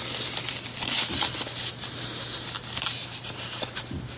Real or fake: real